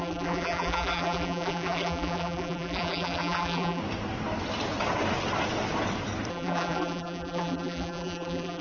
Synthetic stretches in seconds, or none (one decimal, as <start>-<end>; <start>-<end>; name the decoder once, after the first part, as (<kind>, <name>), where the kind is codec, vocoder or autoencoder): 0.0-3.8 (vocoder, BigVGAN v2); 6.3-8.6